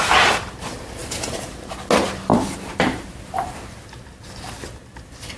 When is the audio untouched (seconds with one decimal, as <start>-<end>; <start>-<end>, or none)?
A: 0.0-1.0; 1.5-2.3; 3.6-5.4